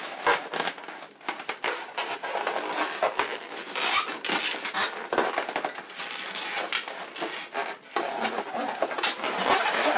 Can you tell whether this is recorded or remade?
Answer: recorded